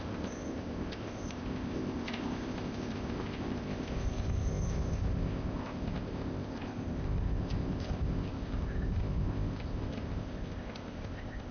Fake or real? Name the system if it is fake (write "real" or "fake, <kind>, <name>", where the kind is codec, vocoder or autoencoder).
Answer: fake, codec, ZipCodec